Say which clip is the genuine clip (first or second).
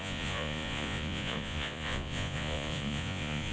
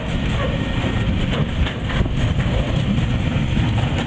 second